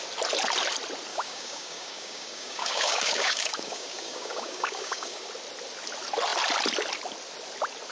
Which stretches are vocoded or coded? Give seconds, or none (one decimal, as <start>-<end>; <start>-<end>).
1.1-5.3